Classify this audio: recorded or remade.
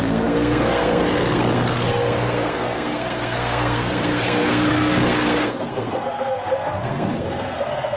remade